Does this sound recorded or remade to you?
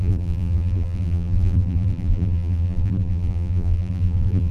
remade